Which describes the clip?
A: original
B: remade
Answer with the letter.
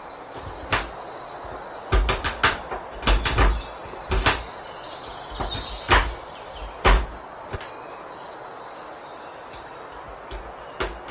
A